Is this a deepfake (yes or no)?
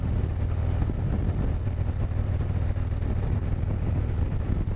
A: no